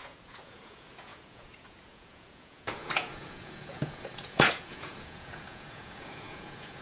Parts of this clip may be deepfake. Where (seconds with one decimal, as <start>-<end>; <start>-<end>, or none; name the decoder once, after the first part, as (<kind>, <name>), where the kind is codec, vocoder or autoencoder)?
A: 0.0-6.8 (vocoder, Vocos)

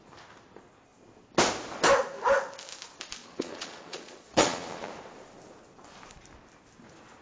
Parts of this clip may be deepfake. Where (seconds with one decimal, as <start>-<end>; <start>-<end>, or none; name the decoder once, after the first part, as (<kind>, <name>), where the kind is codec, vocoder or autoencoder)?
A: 3.2-4.9 (vocoder, Vocos)

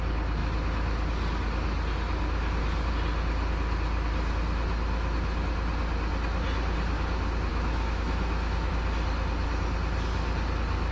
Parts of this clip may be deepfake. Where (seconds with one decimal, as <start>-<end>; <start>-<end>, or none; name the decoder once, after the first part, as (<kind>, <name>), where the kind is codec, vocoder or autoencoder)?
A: 7.5-8.7 (autoencoder, DAC-VAE)

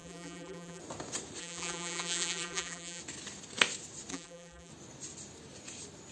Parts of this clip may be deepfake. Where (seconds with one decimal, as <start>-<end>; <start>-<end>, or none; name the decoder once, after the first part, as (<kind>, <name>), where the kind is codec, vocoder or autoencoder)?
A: 0.0-0.8 (vocoder, BigVGAN v2); 1.4-3.0; 4.1-4.7

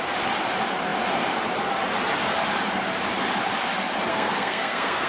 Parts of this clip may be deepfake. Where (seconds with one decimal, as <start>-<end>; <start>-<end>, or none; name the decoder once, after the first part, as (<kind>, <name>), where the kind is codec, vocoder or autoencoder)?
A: 4.1-5.1 (codec, SNAC)